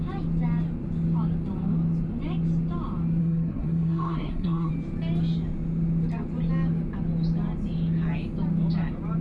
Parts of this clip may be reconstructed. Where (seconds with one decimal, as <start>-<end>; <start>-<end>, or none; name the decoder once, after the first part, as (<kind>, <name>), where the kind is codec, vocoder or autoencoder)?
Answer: 3.2-4.7 (codec, SNAC)